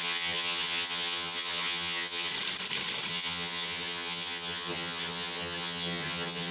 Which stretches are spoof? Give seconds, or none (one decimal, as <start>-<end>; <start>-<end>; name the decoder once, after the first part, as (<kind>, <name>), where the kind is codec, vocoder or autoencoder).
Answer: 0.0-2.3 (vocoder, HiFi-GAN); 3.1-6.5